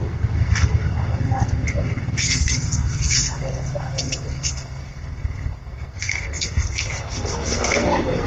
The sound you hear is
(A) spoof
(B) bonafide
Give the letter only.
A